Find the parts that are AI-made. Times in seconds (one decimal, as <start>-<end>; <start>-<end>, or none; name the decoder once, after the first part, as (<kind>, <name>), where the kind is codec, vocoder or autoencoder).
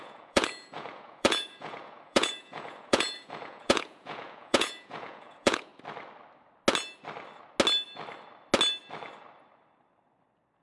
0.0-5.7 (vocoder, Vocos)